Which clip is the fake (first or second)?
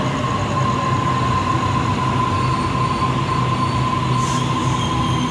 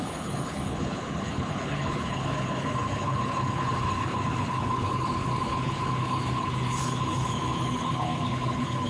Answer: second